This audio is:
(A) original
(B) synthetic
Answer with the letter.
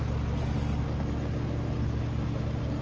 A